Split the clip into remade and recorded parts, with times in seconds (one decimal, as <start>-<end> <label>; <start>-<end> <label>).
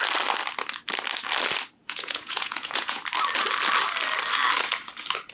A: 0.0-1.8 recorded; 1.8-3.0 remade; 3.0-5.3 recorded